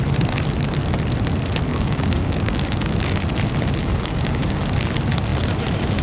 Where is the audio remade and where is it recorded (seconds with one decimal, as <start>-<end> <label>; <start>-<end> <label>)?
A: 0.0-1.7 recorded; 1.7-3.2 remade; 3.2-3.8 recorded; 3.8-4.6 remade; 4.6-6.0 recorded